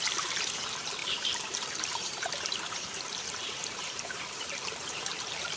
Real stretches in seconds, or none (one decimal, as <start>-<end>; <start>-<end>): none